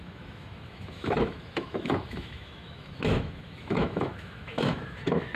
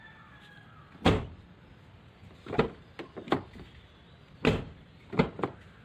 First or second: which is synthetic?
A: first